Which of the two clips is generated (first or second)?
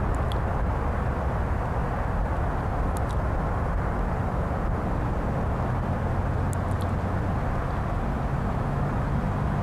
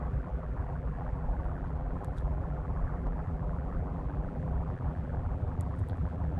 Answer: second